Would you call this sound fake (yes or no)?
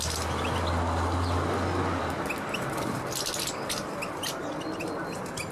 no